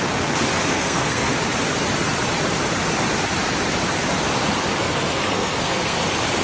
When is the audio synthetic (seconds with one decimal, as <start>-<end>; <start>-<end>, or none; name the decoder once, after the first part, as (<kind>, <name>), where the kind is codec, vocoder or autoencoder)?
0.7-1.3 (codec, SNAC); 4.8-6.0